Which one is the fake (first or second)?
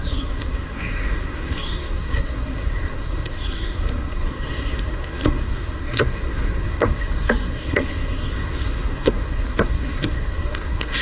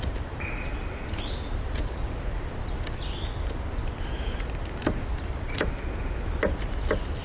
first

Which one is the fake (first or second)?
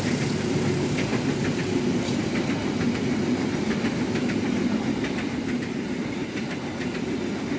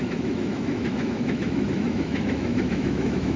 second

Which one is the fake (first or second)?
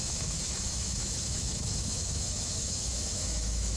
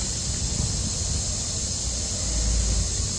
first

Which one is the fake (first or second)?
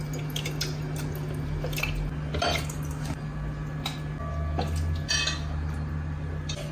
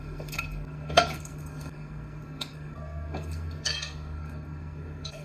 second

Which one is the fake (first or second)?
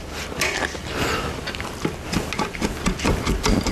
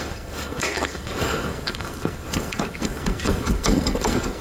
second